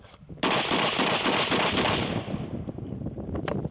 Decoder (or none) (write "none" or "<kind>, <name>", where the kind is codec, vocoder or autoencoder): none